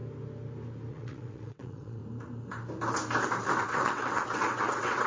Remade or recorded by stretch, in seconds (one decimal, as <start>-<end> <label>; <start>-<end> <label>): 0.0-0.9 recorded; 0.9-2.0 remade; 2.0-3.6 recorded; 3.6-5.1 remade